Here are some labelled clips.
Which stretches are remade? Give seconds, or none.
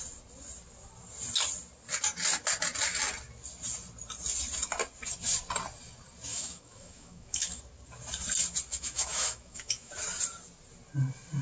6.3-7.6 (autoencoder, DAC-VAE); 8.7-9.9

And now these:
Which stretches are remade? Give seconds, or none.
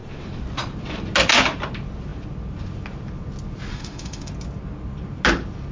3.7-4.3 (autoencoder, DAC-VAE)